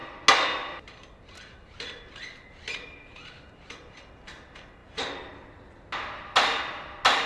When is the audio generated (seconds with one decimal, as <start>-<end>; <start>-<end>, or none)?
none